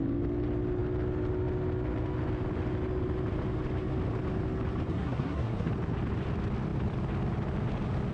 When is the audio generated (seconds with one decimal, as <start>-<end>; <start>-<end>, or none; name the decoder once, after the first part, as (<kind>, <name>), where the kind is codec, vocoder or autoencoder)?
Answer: 4.9-5.7 (codec, SNAC)